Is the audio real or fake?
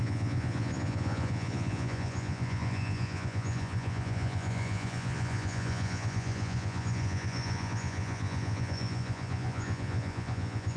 fake